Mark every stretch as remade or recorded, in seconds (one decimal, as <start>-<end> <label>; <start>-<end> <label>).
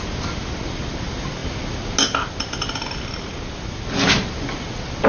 0.0-5.1 recorded